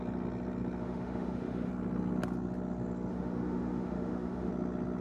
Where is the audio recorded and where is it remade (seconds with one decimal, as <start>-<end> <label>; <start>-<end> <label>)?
0.0-0.8 recorded; 0.8-1.7 remade; 1.7-3.1 recorded; 3.1-4.5 remade; 4.5-5.0 recorded